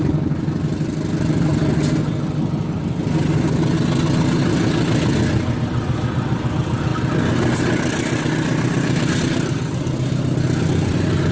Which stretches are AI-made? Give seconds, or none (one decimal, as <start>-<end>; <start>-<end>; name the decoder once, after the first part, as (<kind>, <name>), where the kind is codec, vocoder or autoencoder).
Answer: none